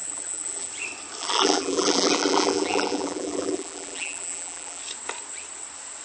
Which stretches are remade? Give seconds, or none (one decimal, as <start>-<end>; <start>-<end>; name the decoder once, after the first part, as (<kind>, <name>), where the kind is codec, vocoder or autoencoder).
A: 0.0-0.7 (vocoder, BigVGAN v2); 1.2-4.8